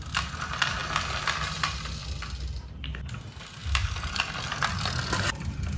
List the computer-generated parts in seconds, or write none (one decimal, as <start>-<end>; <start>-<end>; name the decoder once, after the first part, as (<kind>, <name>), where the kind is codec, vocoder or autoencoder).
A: none